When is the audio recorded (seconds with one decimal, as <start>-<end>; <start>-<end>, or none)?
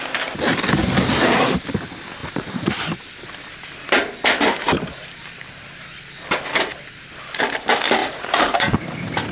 0.0-2.2; 2.7-8.0